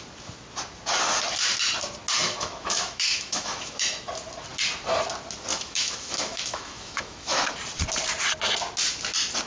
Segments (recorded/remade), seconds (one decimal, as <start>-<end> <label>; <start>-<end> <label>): 0.0-2.2 recorded; 2.2-4.1 remade; 4.1-5.5 recorded; 5.5-7.5 remade; 7.5-9.5 recorded